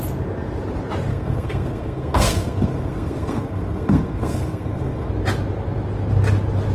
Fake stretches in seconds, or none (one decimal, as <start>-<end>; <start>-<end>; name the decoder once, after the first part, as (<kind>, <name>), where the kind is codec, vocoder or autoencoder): 1.1-5.1 (codec, SNAC)